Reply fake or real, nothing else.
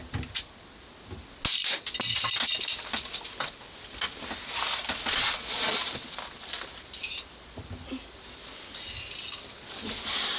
real